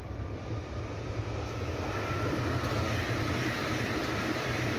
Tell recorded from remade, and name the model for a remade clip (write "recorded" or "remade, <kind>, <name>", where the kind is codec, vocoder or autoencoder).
recorded